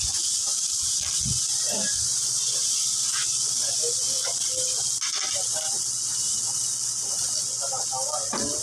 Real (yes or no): yes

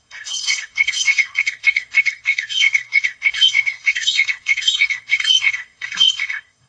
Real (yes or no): no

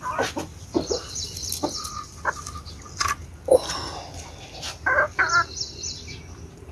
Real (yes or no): yes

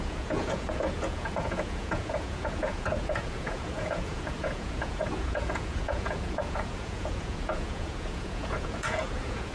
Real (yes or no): no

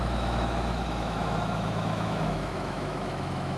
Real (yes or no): no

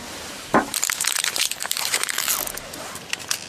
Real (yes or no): yes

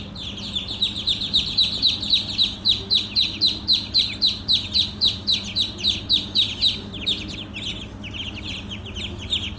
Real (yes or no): yes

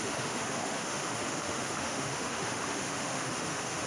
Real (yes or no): no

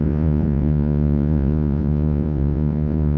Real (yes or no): no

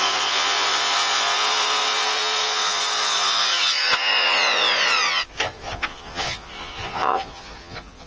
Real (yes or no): no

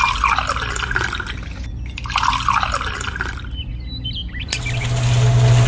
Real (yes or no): yes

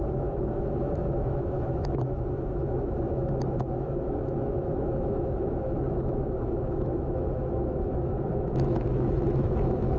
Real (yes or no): no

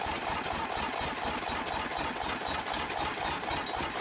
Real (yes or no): yes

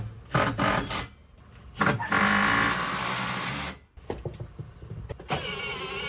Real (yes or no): yes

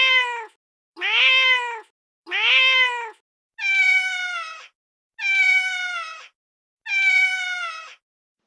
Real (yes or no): yes